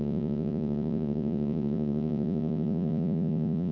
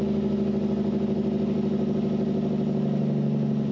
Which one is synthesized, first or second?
first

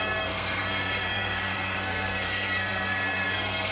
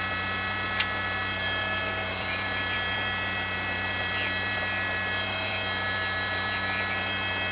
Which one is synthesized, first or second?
first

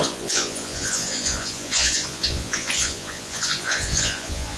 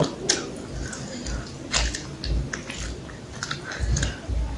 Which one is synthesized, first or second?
first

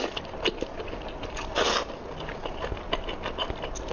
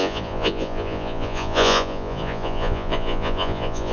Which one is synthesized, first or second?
second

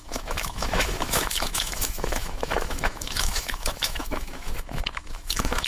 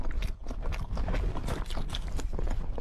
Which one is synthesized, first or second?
first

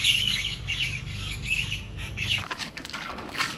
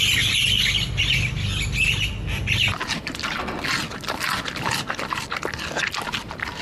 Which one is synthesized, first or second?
first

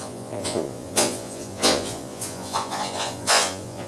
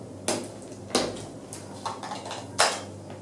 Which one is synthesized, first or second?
first